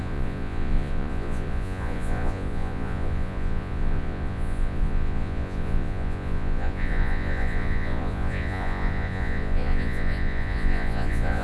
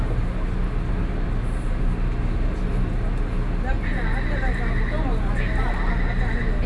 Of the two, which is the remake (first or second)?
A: first